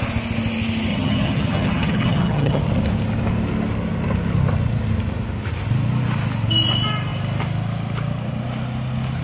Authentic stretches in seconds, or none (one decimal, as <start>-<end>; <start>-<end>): 0.0-0.9; 2.6-9.2